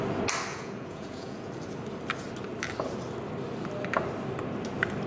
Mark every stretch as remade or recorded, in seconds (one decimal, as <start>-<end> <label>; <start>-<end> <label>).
0.0-0.5 recorded; 0.5-1.5 remade; 1.5-5.1 recorded